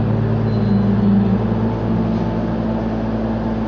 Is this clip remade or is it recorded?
recorded